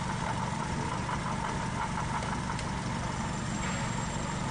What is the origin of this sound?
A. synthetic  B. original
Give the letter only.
B